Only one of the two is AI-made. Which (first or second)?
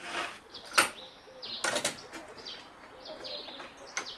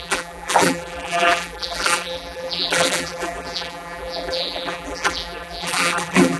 second